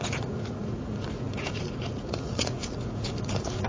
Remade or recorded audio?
remade